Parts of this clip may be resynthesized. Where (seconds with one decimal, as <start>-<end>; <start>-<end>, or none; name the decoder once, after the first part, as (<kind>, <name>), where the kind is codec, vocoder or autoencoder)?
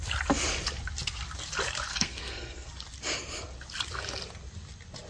1.9-2.7 (codec, SNAC)